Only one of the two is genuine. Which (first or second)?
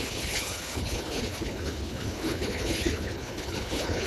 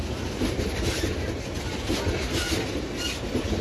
second